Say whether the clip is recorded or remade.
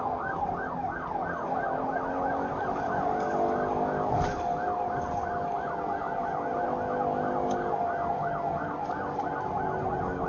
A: recorded